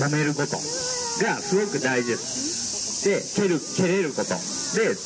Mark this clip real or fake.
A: real